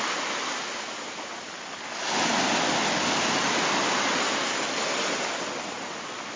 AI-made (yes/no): no